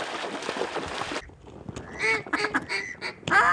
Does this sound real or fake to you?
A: real